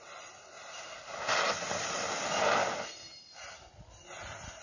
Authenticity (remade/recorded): recorded